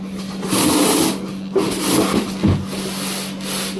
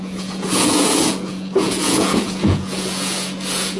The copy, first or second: second